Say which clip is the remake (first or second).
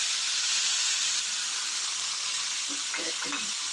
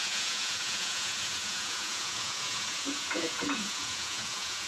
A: second